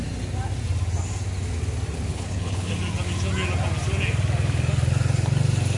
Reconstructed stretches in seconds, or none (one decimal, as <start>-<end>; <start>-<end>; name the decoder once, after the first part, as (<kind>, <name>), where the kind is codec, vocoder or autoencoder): 2.1-2.7 (codec, HILCodec)